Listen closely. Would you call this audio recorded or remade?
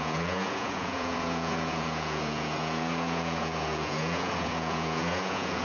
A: remade